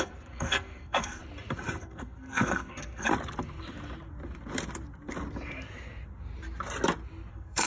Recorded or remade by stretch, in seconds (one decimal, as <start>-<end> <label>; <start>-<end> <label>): 0.0-1.2 remade; 1.2-1.8 recorded; 1.8-3.1 remade; 3.1-7.3 recorded; 7.3-7.7 remade